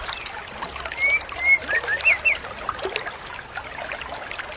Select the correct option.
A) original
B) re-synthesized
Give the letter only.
A